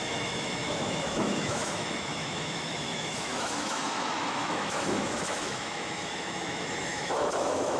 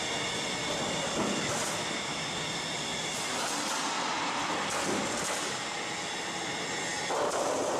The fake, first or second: first